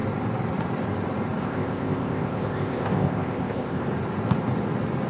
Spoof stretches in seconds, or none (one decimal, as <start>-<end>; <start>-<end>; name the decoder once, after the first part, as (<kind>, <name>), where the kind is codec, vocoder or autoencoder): 1.4-3.8 (codec, ZipCodec)